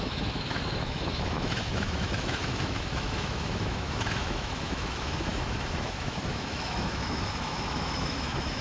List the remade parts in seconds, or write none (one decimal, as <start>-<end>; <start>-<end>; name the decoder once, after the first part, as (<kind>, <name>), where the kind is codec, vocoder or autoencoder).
0.0-8.6 (autoencoder, DAC-VAE)